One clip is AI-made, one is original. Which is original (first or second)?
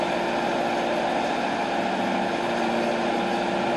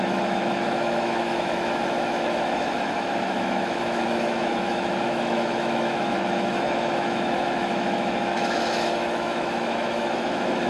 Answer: first